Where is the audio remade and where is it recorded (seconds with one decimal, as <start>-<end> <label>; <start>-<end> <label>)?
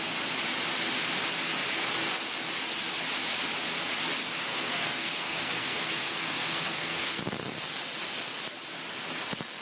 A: 0.0-4.5 recorded; 4.5-7.2 remade; 7.2-9.6 recorded